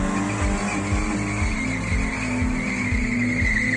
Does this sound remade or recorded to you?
recorded